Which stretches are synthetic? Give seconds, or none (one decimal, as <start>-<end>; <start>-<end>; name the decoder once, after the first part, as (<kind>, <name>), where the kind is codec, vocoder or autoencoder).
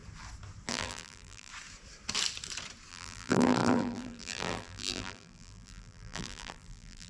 0.7-1.5 (vocoder, BigVGAN v2); 2.9-7.1